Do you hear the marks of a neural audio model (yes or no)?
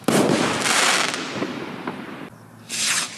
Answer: no